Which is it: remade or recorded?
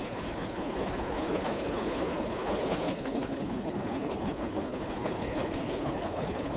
remade